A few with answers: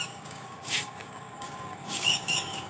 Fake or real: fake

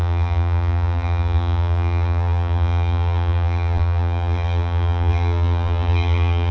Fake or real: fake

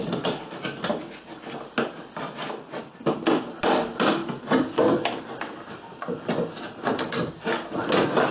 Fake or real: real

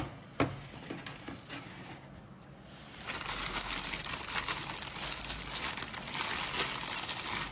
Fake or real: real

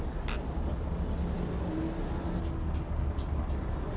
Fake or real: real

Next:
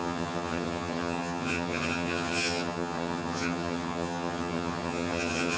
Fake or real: fake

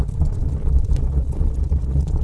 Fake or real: fake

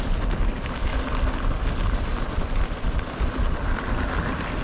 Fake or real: real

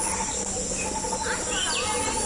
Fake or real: real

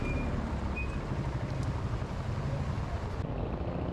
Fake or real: real